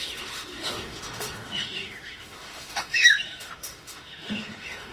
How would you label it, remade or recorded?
remade